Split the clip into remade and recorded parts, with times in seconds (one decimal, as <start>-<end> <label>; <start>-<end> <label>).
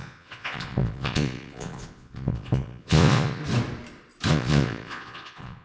0.0-3.4 remade; 3.4-4.3 recorded; 4.3-5.6 remade